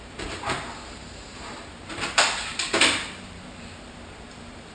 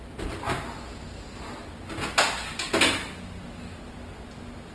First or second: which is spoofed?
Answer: first